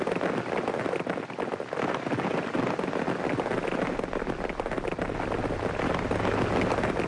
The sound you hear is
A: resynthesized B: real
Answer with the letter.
B